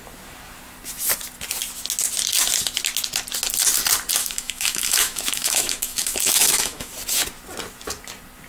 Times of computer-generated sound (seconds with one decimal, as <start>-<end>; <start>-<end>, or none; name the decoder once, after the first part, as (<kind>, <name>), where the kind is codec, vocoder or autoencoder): 4.2-6.9 (autoencoder, DAC-VAE)